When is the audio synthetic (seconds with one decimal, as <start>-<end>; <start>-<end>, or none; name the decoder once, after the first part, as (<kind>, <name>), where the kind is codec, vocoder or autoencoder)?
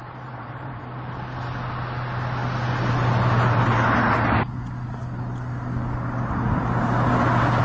0.0-0.8 (vocoder, BigVGAN v2)